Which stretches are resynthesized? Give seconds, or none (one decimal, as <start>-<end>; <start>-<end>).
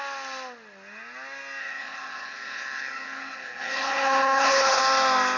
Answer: 1.6-4.8